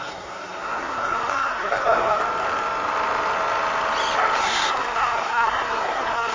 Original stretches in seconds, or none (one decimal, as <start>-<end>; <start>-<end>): 2.2-4.4